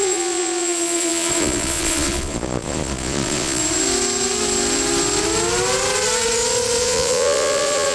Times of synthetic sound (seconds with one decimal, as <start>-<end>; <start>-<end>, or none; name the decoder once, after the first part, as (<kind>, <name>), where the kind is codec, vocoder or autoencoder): 0.0-3.6 (vocoder, Vocos); 6.8-7.9